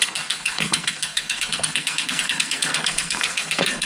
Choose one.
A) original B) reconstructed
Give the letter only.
B